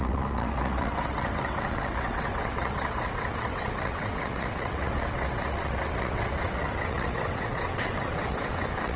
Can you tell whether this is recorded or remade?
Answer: remade